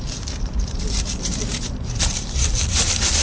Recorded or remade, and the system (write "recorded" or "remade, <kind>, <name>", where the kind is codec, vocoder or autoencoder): remade, vocoder, BigVGAN v2